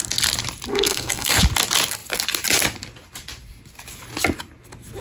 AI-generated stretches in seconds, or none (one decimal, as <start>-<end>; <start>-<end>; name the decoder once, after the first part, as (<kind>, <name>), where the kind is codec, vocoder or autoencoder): 0.7-1.4 (codec, SNAC)